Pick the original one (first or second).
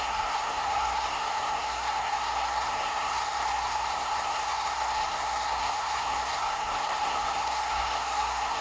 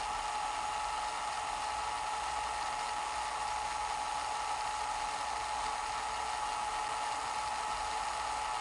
second